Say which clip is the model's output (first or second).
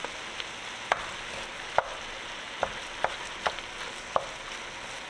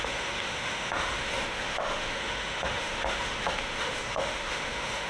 second